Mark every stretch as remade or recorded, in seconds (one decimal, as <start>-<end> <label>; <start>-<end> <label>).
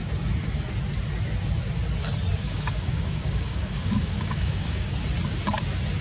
0.0-2.4 recorded; 2.4-4.9 remade; 4.9-6.0 recorded